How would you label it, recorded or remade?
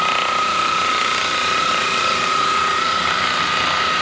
recorded